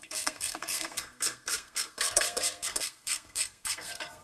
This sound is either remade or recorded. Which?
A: remade